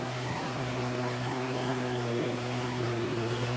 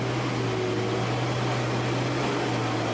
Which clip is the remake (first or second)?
first